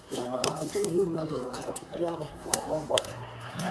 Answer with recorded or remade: remade